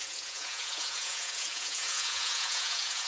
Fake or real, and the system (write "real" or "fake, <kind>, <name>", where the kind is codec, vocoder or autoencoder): fake, vocoder, Vocos